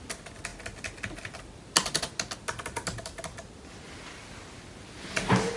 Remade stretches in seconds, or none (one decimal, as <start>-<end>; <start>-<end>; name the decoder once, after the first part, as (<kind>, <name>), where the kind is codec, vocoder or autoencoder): none